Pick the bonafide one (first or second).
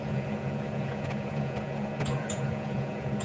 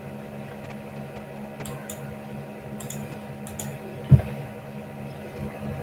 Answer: second